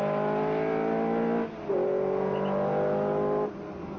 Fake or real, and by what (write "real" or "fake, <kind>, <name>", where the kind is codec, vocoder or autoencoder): real